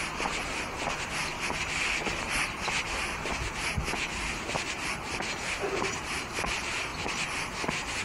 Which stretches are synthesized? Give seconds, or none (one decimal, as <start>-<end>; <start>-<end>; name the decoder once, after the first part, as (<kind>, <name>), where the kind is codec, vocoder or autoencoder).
4.0-6.9 (vocoder, BigVGAN v2)